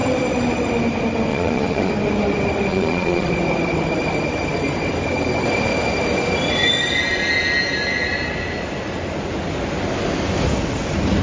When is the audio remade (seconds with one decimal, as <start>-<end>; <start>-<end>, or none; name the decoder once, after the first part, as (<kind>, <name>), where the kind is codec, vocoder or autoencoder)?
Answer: 1.3-1.9 (vocoder, Vocos); 2.7-3.3